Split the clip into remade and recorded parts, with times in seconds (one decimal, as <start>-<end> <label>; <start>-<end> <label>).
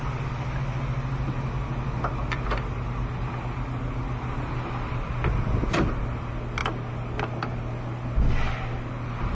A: 0.0-9.3 recorded